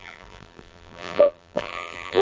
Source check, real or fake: fake